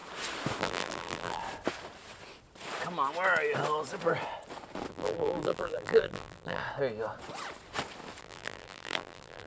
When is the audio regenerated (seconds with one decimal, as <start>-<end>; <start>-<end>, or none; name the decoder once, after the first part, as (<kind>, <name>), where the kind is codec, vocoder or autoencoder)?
0.6-1.4 (vocoder, BigVGAN v2); 4.9-6.6; 8.2-9.5